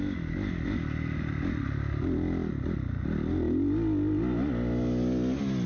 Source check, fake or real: real